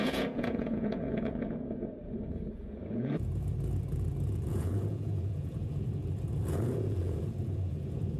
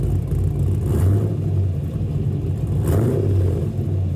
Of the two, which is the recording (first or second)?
second